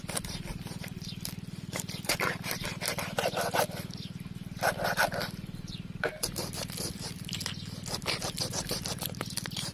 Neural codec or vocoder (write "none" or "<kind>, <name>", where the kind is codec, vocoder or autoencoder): vocoder, BigVGAN v2